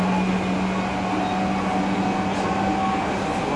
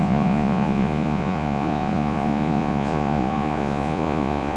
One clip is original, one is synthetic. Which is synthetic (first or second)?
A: second